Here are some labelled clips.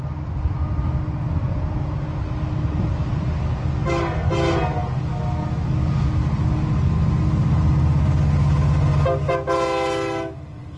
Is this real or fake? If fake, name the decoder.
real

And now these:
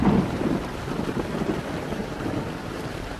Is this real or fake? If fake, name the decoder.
fake, vocoder, BigVGAN v2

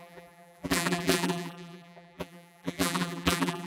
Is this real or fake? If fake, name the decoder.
fake, vocoder, BigVGAN v2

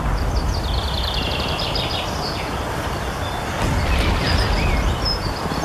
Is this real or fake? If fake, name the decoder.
fake, vocoder, BigVGAN v2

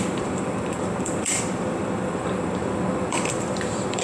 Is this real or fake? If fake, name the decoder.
fake, vocoder, BigVGAN v2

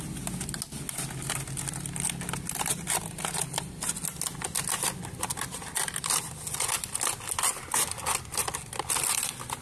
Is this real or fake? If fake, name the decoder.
real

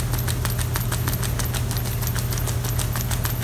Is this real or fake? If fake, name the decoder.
real